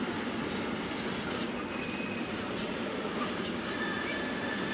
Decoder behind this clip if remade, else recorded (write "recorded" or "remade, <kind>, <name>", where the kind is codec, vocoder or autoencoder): recorded